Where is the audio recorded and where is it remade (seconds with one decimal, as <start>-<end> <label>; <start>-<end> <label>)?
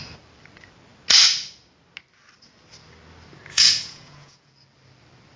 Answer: 0.0-3.5 recorded; 3.5-4.5 remade; 4.5-5.4 recorded